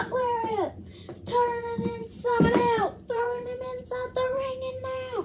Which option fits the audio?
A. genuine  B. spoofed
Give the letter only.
B